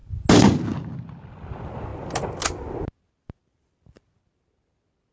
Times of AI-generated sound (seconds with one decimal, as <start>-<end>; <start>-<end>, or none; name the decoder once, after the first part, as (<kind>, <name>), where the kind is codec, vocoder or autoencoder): none